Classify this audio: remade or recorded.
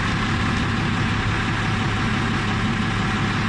recorded